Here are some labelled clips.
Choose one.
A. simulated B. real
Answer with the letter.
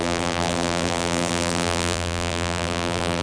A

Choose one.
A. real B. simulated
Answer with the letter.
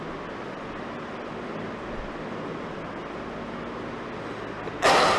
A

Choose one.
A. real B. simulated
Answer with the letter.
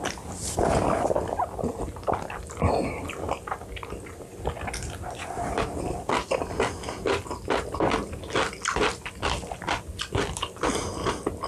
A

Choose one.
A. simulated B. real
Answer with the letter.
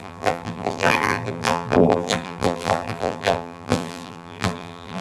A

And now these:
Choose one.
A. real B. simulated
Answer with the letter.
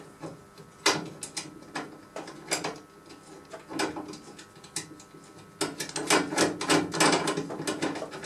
A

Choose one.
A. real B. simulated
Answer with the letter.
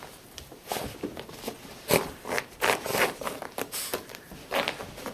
B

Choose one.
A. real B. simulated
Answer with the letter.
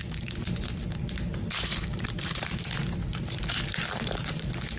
B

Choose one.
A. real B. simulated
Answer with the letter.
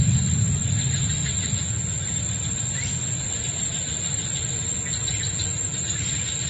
B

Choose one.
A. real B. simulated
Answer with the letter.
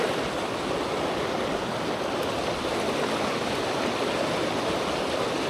A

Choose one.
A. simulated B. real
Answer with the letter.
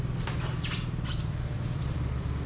A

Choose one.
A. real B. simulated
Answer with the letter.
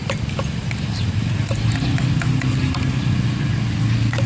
A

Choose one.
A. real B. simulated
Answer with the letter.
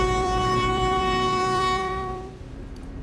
B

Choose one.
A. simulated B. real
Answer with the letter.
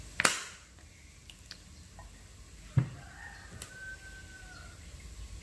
B